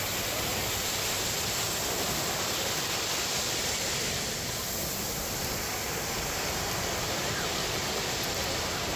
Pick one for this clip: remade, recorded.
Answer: recorded